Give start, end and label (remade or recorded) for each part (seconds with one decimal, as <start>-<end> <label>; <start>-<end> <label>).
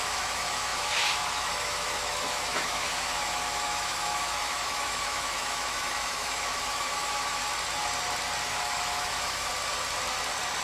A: 0.0-7.4 remade; 7.4-8.5 recorded; 8.5-9.5 remade; 9.5-10.6 recorded